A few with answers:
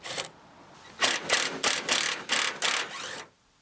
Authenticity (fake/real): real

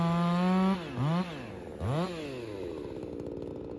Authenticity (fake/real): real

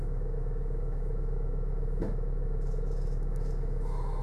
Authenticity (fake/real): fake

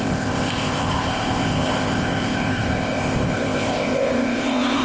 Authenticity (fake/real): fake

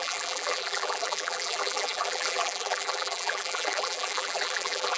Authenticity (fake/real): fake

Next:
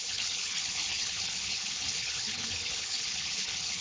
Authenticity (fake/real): fake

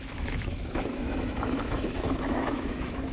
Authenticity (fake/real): fake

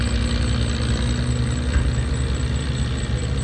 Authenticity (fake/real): real